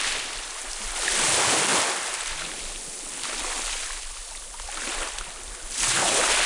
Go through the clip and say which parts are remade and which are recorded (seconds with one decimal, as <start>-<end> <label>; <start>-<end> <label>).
0.0-6.5 recorded